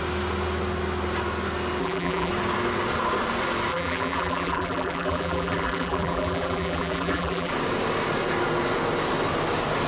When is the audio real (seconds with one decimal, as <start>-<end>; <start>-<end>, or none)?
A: 0.0-1.8; 2.3-3.7; 7.5-9.9